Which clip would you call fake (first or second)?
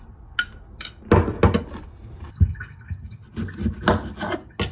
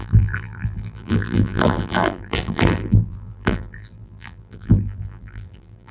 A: second